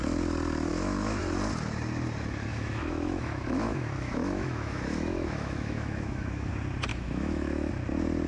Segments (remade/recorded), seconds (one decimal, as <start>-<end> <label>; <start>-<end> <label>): 0.0-0.7 recorded; 0.7-1.2 remade; 1.2-2.5 recorded; 2.5-6.5 remade; 6.5-6.9 recorded; 6.9-7.7 remade; 7.7-8.3 recorded